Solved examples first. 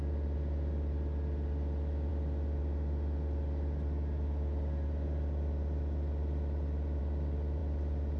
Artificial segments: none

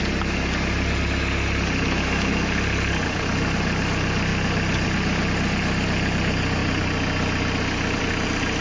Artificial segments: none

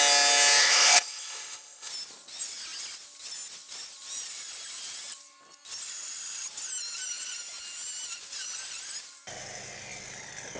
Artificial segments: 0.6-1.9 (codec, ZipCodec)

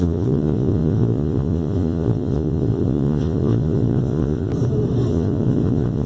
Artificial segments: 0.0-4.5 (vocoder, Vocos); 5.1-6.1

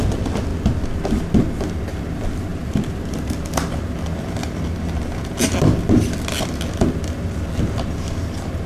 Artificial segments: none

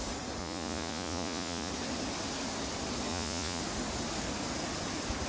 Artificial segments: 0.4-1.7 (vocoder, Vocos); 3.1-3.6

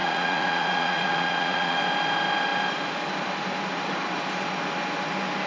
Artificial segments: 0.0-1.8 (vocoder, Vocos)